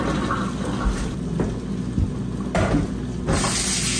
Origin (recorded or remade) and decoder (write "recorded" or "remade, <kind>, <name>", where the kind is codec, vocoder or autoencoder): recorded